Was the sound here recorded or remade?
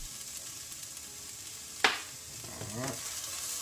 recorded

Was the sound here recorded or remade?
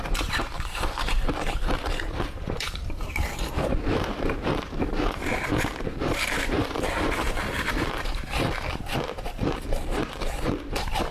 remade